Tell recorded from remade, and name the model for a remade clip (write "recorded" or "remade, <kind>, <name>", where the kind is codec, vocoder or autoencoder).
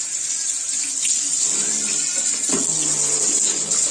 recorded